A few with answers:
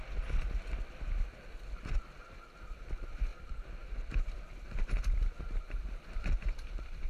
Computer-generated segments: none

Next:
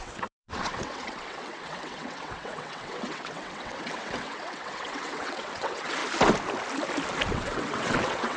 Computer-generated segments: 0.0-6.0 (vocoder, WaveNeXt); 7.3-8.4

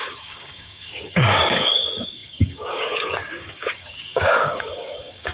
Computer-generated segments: 0.0-5.3 (codec, DAC)

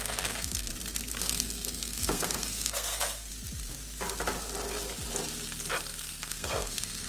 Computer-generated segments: 0.0-0.7 (codec, SNAC); 1.2-3.3; 6.0-7.1

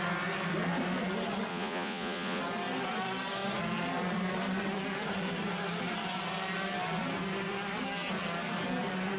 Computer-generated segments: 1.5-2.4 (vocoder, Vocos)

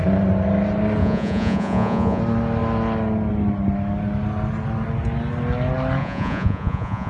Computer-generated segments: 1.0-2.2 (vocoder, Vocos); 6.0-7.1